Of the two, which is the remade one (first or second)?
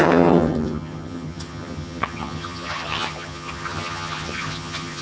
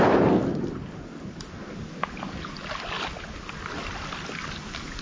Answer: first